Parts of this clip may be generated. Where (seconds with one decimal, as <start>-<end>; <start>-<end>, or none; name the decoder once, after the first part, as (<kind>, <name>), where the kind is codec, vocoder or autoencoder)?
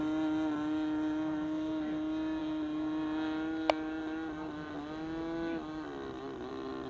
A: none